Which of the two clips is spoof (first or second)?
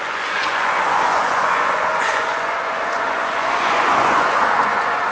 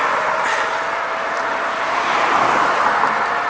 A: first